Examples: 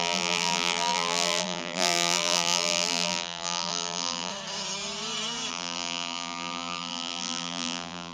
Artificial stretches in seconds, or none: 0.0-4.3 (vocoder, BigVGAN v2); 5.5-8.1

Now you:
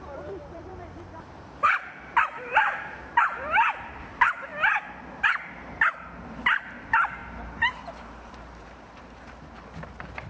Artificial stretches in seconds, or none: 0.0-4.5 (vocoder, BigVGAN v2); 6.8-10.3

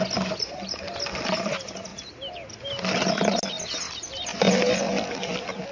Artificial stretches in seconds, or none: none